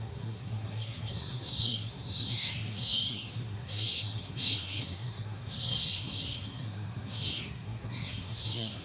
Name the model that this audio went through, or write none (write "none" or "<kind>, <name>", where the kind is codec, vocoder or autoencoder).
codec, SNAC